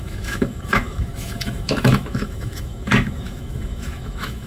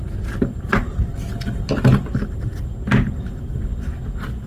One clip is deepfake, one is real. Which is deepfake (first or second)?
first